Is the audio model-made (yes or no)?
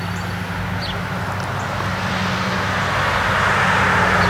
no